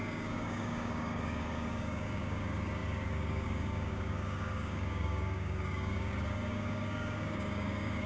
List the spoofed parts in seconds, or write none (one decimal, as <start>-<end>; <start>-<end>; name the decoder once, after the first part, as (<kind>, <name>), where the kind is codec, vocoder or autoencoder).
0.0-8.1 (codec, DAC)